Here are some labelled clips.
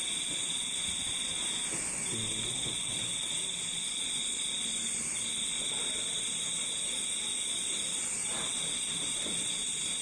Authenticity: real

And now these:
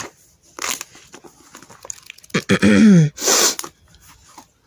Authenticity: real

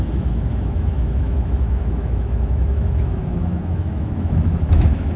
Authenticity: fake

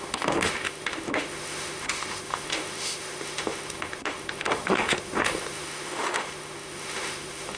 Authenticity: fake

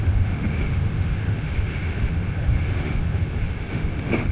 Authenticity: fake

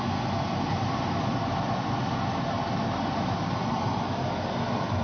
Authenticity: real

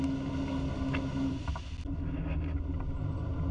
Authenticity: real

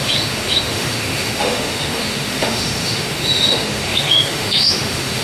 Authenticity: fake